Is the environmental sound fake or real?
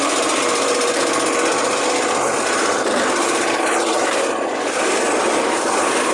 real